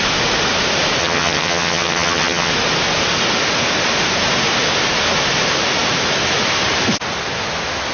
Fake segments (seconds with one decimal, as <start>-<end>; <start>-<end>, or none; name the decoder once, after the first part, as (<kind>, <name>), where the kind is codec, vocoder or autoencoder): 1.0-2.5 (vocoder, HiFi-GAN)